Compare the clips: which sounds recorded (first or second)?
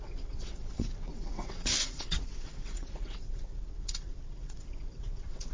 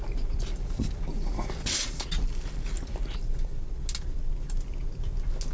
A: second